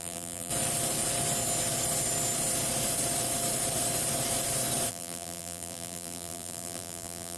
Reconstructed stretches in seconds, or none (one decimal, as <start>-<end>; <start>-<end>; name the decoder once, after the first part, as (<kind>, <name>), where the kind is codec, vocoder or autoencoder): 0.0-0.5 (vocoder, BigVGAN v2); 4.9-7.4